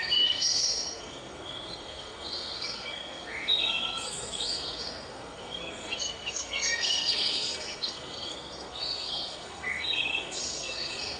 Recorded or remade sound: remade